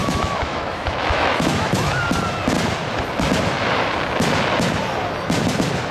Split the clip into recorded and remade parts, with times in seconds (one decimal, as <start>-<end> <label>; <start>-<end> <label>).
0.0-1.9 remade; 1.9-5.9 recorded

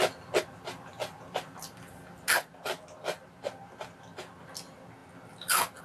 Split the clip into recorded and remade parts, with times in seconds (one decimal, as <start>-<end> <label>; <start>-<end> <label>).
0.0-5.8 recorded

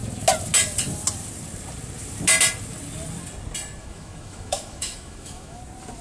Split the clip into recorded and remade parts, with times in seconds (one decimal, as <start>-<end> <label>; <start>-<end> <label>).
0.0-3.8 recorded; 3.8-5.6 remade; 5.6-6.0 recorded